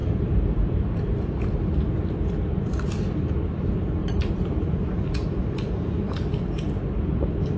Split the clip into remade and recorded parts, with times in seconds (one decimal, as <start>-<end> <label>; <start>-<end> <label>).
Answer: 0.0-1.9 remade; 1.9-4.0 recorded; 4.0-4.8 remade; 4.8-5.4 recorded; 5.4-5.9 remade; 5.9-7.6 recorded